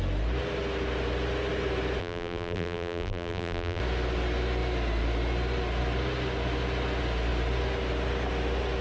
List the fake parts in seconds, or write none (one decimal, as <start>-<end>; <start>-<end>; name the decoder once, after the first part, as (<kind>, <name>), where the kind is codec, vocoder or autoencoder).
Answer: 2.0-3.8 (vocoder, BigVGAN v2)